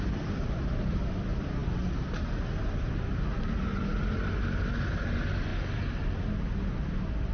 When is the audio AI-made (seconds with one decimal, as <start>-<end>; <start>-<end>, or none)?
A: none